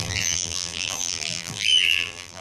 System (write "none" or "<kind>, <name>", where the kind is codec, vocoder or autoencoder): vocoder, BigVGAN v2